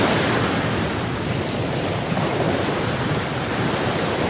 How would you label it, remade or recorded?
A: recorded